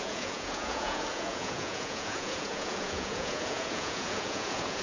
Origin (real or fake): fake